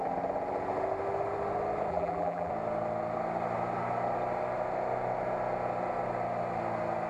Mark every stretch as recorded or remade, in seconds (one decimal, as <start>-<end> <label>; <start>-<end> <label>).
0.0-1.9 recorded; 1.9-2.5 remade; 2.5-7.1 recorded